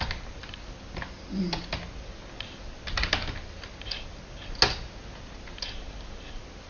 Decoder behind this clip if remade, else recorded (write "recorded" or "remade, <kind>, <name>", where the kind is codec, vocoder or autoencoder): recorded